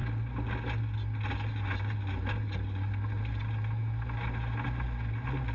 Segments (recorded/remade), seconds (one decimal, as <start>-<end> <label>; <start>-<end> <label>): 0.0-5.5 recorded